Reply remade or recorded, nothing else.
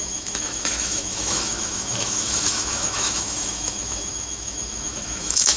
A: remade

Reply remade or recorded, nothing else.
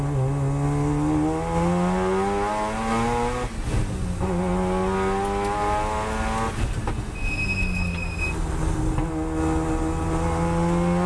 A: recorded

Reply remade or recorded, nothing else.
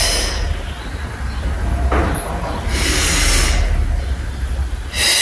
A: recorded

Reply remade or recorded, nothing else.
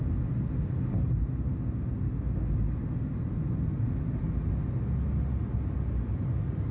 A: recorded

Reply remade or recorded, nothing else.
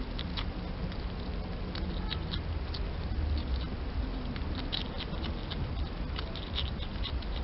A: recorded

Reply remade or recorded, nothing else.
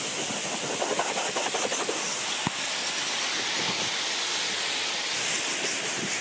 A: recorded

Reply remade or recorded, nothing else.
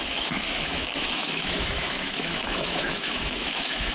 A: remade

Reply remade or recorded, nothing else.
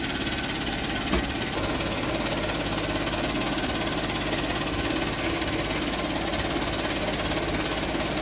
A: recorded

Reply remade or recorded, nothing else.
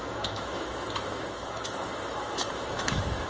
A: remade